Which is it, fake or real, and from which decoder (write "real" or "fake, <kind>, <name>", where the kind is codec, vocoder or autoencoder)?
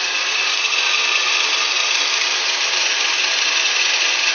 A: real